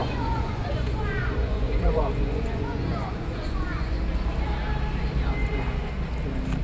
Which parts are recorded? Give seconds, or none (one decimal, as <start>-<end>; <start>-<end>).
4.0-5.4; 5.9-6.6